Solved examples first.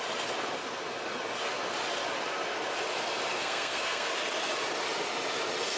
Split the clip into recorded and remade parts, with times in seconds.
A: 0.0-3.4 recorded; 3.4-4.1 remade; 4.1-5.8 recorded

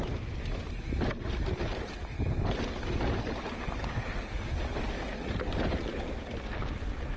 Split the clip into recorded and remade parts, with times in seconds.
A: 0.0-7.2 recorded

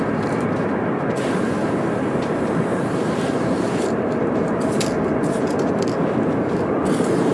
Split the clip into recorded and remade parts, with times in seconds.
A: 0.0-7.3 remade

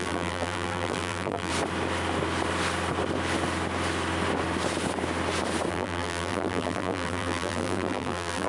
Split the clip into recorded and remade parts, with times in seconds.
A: 0.0-1.5 remade; 1.5-5.7 recorded; 5.7-8.5 remade

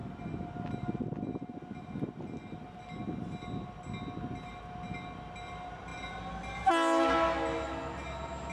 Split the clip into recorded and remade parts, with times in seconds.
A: 0.0-8.5 recorded

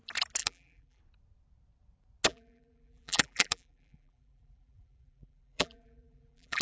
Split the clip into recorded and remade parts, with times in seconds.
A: 0.0-0.4 recorded; 0.4-1.0 remade; 1.0-2.3 recorded; 2.3-6.6 remade